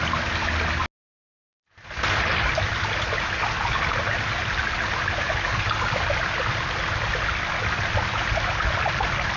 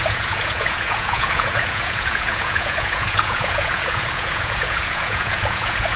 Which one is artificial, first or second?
second